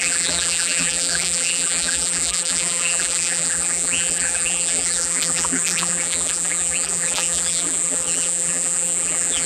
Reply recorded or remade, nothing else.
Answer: remade